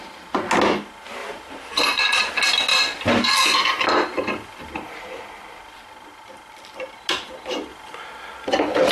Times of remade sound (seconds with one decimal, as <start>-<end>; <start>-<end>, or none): 1.2-2.3

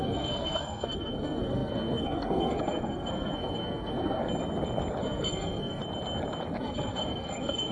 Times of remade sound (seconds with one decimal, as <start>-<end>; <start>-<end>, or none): 0.0-4.2; 5.0-5.8; 6.6-7.7

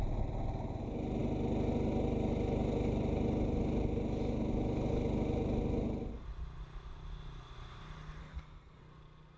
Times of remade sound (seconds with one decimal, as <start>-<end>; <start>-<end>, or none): 8.2-8.8

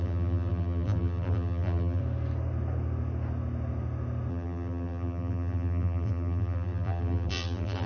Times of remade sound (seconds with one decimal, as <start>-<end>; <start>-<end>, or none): 0.0-2.0; 4.3-7.9

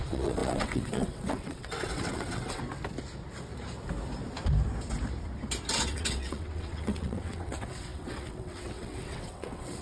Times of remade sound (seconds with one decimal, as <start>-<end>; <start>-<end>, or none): 0.0-2.6; 5.7-9.8

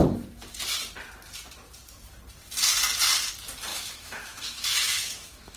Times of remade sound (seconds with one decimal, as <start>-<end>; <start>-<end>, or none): 3.7-5.6

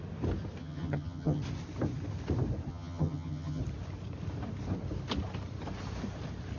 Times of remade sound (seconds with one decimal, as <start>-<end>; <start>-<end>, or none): 0.6-1.4; 2.7-3.6

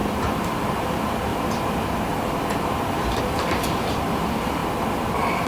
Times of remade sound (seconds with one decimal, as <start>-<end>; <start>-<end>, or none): 0.0-4.6